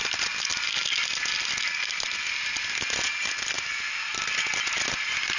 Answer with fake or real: real